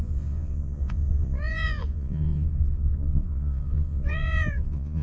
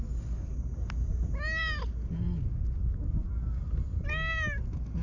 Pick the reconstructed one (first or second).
first